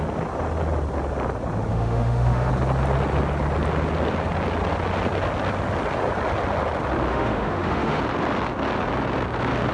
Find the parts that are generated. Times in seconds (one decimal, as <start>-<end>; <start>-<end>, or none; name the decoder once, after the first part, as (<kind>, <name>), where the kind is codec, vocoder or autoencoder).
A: 1.7-2.5 (autoencoder, DAC-VAE); 7.1-8.0